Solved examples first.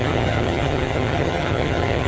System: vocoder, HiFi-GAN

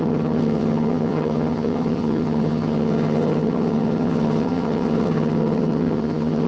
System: vocoder, HiFi-GAN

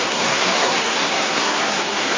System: codec, SNAC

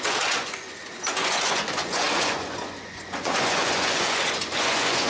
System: vocoder, Vocos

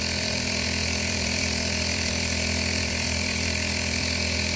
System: vocoder, BigVGAN v2